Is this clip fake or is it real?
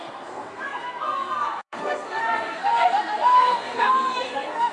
fake